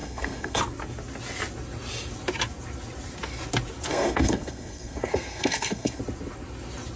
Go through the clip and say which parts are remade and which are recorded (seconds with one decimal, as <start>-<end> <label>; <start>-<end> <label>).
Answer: 0.0-0.6 remade; 0.6-3.9 recorded; 3.9-6.0 remade; 6.0-7.0 recorded